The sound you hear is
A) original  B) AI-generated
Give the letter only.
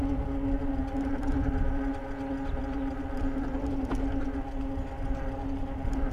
A